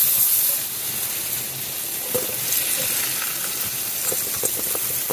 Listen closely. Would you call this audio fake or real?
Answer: real